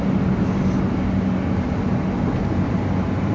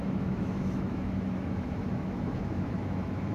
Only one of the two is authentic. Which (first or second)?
first